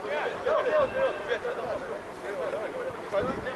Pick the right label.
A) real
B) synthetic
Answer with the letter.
A